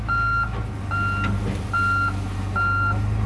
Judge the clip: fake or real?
real